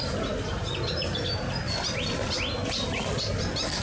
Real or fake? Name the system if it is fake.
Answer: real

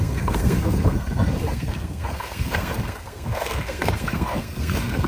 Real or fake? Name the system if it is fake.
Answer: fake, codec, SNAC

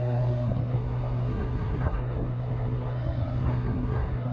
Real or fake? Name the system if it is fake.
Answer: fake, codec, SNAC